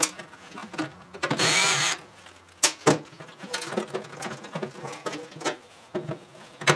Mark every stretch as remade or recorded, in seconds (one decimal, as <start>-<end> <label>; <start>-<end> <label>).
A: 0.0-0.6 recorded; 0.6-2.2 remade; 2.2-6.8 recorded